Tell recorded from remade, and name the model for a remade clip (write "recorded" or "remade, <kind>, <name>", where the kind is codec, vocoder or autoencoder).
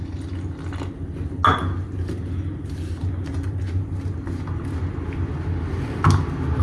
recorded